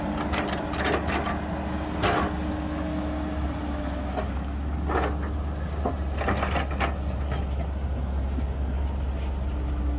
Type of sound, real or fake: real